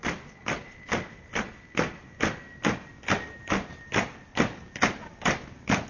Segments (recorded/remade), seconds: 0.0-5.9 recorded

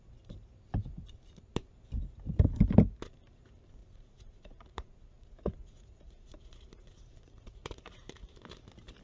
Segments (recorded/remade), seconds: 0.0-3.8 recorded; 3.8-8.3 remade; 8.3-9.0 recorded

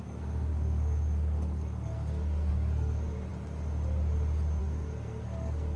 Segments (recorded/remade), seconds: 0.0-3.3 remade; 3.3-4.6 recorded; 4.6-5.8 remade

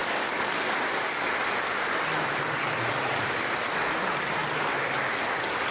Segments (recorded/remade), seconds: 0.0-0.5 remade; 0.5-5.7 recorded

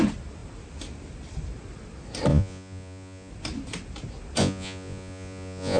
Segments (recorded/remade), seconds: 0.0-2.3 recorded; 2.3-3.3 remade; 3.3-4.4 recorded; 4.4-5.8 remade

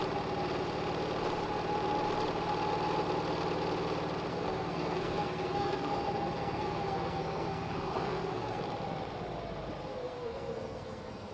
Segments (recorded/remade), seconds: 0.0-4.3 recorded; 4.3-8.6 remade; 8.6-9.9 recorded; 9.9-11.3 remade

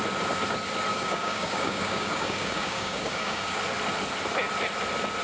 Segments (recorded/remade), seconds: 0.0-0.9 recorded; 0.9-3.6 remade; 3.6-5.2 recorded